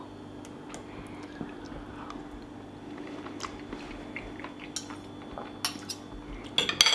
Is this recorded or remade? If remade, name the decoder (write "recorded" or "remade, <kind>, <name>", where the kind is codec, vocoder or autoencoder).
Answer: recorded